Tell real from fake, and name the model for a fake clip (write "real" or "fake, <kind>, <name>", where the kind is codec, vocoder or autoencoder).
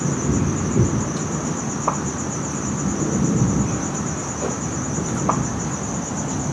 fake, vocoder, BigVGAN v2